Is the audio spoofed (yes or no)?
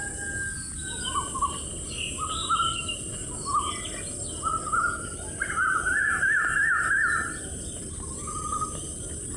no